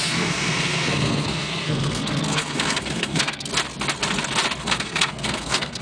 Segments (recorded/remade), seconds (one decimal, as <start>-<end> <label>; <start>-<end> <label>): 0.0-3.5 remade; 3.5-4.6 recorded; 4.6-5.8 remade